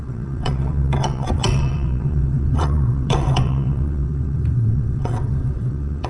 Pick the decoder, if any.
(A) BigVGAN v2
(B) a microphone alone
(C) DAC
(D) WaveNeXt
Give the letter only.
D